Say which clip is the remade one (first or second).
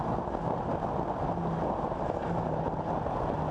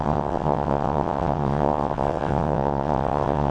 second